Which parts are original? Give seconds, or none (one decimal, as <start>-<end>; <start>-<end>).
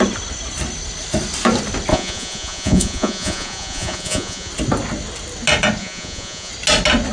0.0-1.9; 4.5-5.8; 6.5-7.1